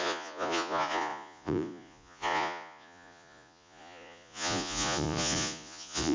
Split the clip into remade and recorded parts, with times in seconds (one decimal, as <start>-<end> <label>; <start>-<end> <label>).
0.0-6.1 remade